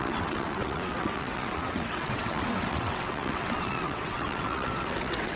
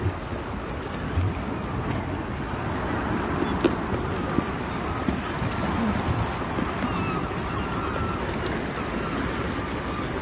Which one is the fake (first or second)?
first